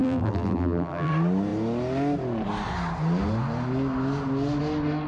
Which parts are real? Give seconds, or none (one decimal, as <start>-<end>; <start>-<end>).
1.1-5.1